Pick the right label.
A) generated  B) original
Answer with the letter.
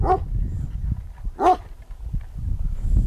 B